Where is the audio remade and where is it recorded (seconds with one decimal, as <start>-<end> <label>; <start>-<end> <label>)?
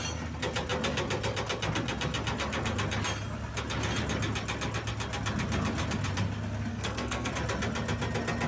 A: 0.0-6.7 recorded; 6.7-7.3 remade; 7.3-8.5 recorded